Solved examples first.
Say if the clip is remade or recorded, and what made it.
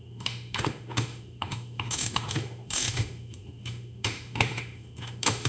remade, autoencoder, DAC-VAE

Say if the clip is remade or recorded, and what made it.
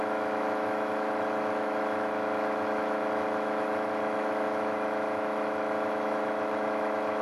remade, autoencoder, DAC-VAE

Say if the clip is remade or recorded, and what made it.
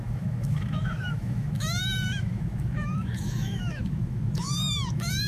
remade, autoencoder, DAC-VAE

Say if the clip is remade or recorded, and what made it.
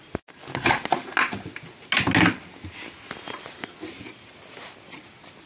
recorded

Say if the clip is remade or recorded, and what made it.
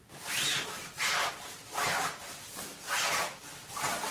recorded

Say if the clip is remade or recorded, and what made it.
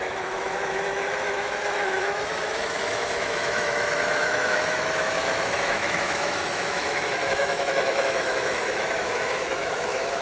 remade, autoencoder, DAC-VAE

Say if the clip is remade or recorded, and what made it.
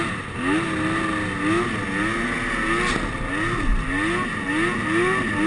recorded